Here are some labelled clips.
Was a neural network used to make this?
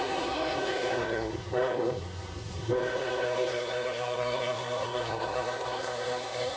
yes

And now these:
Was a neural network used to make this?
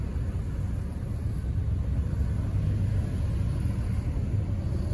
no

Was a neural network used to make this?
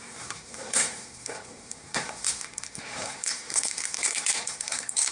yes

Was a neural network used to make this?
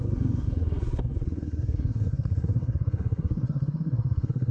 yes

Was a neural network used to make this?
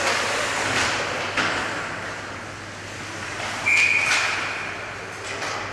no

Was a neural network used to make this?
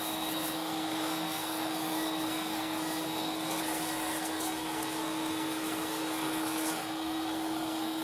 yes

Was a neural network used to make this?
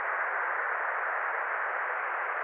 no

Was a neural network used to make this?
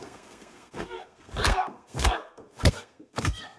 yes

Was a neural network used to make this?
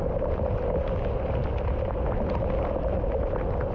no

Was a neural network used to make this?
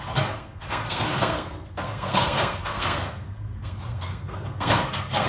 yes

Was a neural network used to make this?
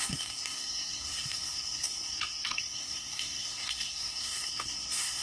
yes